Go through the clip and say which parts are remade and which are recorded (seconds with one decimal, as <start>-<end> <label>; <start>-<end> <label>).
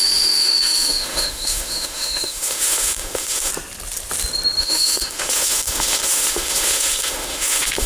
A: 0.0-3.5 remade; 3.5-4.6 recorded; 4.6-7.9 remade